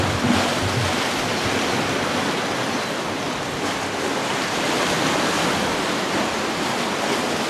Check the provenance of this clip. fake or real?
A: real